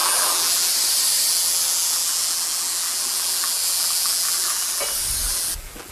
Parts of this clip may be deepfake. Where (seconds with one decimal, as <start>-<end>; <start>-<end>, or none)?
0.0-0.7; 1.3-4.8; 5.2-5.9